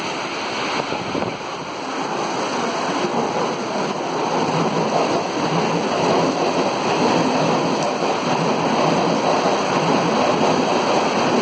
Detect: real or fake real